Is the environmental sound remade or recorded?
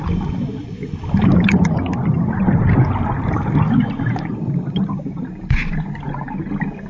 recorded